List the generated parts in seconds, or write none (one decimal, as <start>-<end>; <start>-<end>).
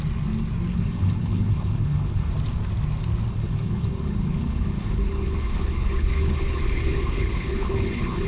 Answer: 0.7-2.3; 3.3-8.3